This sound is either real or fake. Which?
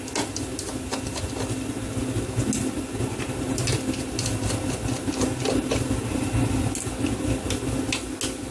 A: real